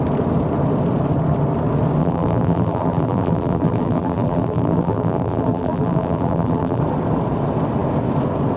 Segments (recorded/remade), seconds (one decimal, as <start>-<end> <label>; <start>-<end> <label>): 0.0-2.0 recorded; 2.0-6.8 remade; 6.8-8.6 recorded